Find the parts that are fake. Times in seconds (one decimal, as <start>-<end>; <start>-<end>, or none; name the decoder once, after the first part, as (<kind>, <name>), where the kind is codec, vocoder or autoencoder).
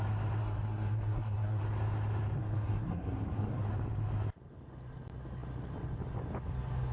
0.4-1.6 (codec, SNAC); 2.4-3.7